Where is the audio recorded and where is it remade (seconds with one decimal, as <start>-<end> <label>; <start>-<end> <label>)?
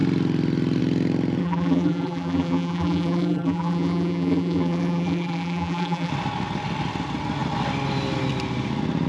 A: 0.0-1.4 recorded; 1.4-6.1 remade; 6.1-9.1 recorded